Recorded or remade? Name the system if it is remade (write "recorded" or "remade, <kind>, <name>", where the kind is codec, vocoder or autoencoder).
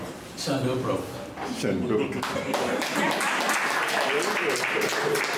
recorded